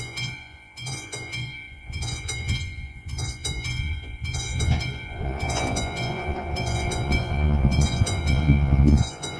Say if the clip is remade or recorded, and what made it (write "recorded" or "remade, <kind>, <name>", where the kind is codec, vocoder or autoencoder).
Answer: remade, vocoder, Vocos